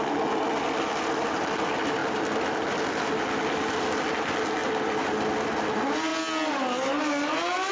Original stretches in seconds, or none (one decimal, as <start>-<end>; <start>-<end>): 0.0-7.7